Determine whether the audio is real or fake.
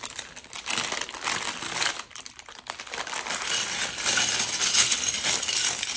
real